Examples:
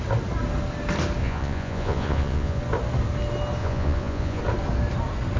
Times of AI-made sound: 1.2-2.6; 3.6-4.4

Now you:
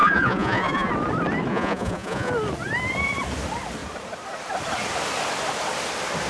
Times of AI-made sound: 0.0-0.9; 1.5-2.3

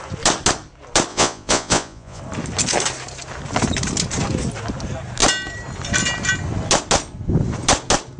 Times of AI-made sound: 1.1-2.2